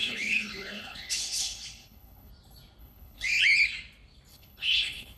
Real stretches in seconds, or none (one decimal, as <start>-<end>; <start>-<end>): 2.3-2.8; 3.4-4.3